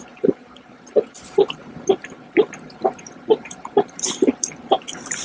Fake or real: fake